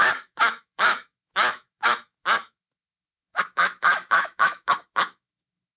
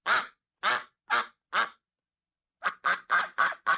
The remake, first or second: first